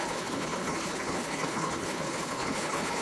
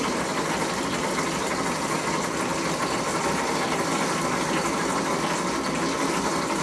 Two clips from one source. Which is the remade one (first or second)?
first